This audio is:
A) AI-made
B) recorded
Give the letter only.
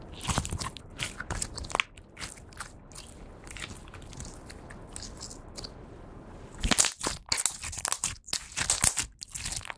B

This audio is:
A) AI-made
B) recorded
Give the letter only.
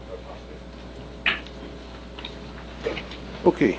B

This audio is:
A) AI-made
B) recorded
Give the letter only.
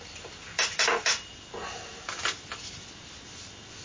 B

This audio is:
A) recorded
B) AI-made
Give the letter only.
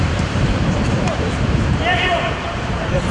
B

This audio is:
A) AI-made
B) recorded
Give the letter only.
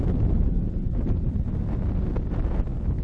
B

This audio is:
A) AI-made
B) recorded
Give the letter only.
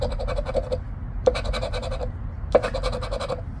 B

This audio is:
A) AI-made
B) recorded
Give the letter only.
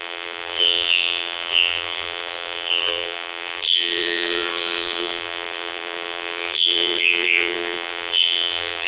A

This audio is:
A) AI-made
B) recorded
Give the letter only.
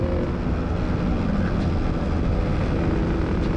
B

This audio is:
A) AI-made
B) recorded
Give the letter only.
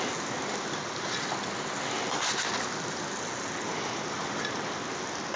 B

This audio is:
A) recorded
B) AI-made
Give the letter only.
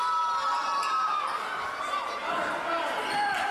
A